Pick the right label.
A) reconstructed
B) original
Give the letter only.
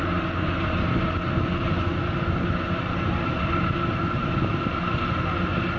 B